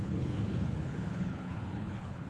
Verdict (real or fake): fake